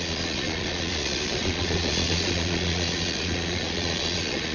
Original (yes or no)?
no